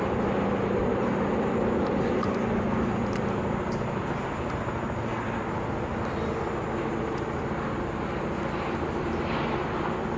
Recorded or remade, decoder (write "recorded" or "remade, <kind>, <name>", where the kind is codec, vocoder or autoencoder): recorded